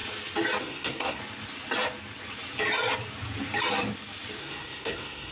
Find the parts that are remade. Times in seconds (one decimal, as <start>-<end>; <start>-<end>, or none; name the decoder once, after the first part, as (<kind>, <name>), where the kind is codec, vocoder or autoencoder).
0.6-1.2 (codec, SNAC); 4.4-5.3

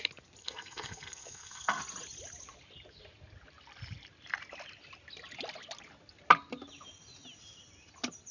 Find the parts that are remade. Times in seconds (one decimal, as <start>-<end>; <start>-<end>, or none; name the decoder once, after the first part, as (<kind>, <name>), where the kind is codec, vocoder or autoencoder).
0.4-1.8 (codec, SNAC)

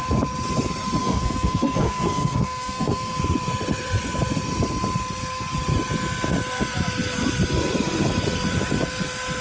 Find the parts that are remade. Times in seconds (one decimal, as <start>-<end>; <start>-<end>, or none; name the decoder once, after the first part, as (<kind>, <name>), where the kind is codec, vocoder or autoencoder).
1.0-3.2 (codec, SNAC)

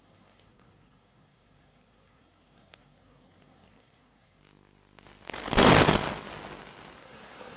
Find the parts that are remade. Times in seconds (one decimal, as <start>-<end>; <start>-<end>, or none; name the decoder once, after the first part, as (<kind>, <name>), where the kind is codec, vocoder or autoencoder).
0.0-4.4 (codec, SNAC); 7.0-7.6

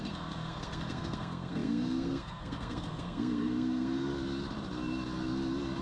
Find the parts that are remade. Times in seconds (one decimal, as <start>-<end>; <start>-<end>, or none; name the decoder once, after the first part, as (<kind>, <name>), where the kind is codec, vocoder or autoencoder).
0.0-4.1 (codec, SNAC)

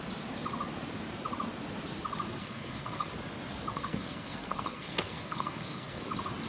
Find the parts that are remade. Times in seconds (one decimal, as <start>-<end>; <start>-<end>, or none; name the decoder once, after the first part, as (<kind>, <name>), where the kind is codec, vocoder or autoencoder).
2.4-3.1 (codec, SNAC); 3.7-6.0